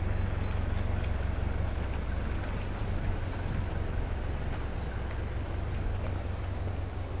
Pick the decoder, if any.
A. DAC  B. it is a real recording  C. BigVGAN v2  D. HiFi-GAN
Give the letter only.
B